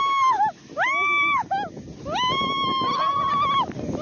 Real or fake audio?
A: real